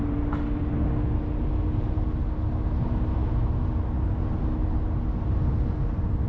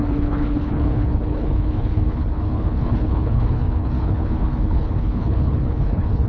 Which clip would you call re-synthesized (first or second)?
second